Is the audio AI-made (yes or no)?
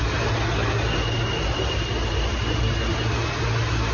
no